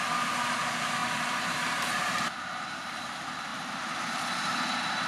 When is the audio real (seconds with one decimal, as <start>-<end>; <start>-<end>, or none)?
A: 0.0-1.0; 3.1-3.5; 4.2-5.1